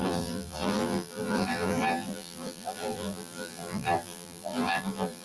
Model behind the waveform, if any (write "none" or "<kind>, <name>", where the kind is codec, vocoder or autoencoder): vocoder, BigVGAN v2